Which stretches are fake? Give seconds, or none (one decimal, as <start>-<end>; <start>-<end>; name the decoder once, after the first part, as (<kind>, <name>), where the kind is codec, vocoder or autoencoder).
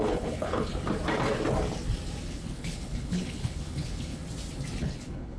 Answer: 0.0-0.7 (codec, HILCodec); 2.3-4.2; 4.8-5.4